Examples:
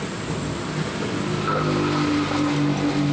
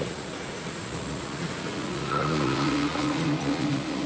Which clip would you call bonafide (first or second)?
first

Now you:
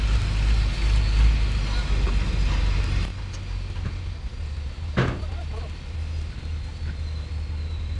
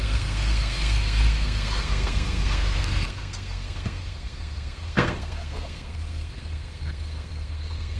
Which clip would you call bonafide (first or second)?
first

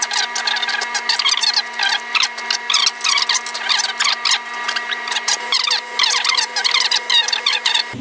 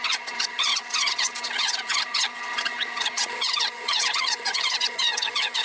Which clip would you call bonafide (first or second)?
first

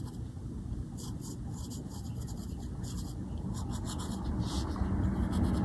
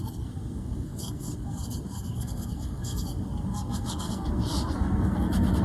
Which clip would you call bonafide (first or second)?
first